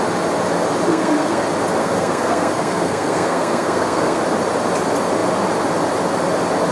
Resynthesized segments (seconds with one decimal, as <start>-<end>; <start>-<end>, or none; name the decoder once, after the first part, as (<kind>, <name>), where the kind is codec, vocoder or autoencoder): 0.9-1.4 (codec, SNAC); 1.8-4.2